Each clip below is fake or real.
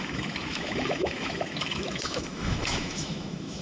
fake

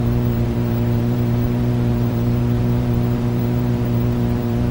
fake